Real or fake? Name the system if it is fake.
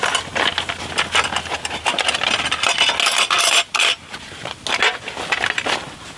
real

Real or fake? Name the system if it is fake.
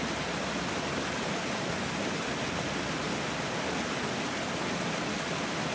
real